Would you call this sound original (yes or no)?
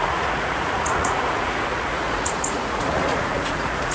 no